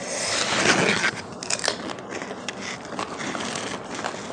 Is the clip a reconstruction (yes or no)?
no